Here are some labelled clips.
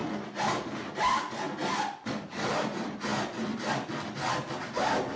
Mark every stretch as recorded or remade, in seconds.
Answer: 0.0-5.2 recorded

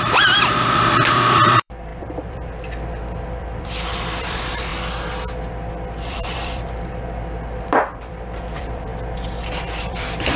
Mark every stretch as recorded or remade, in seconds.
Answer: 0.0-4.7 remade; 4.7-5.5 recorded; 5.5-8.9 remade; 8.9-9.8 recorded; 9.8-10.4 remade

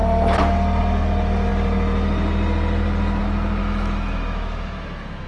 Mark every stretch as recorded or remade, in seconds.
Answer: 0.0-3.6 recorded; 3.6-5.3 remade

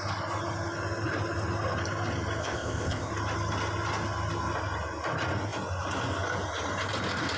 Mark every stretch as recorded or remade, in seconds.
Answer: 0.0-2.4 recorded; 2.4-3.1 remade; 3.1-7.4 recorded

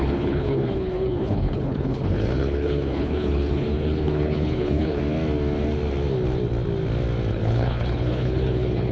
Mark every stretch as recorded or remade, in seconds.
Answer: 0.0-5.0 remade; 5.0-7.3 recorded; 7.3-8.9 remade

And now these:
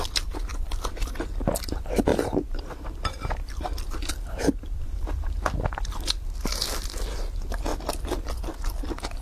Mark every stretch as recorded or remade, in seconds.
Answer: 0.0-9.2 remade

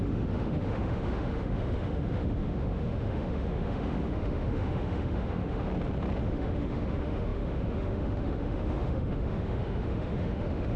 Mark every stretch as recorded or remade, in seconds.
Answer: 0.0-5.7 remade; 5.7-6.2 recorded; 6.2-10.8 remade